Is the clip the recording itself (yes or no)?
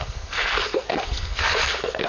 no